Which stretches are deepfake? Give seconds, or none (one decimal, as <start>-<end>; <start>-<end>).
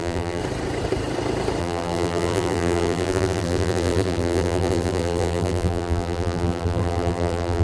0.0-0.4; 1.6-7.6